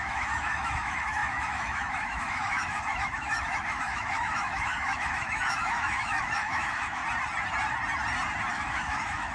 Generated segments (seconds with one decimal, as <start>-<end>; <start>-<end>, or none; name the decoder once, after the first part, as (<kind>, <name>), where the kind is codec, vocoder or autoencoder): 0.0-7.0 (autoencoder, DAC-VAE); 8.5-9.3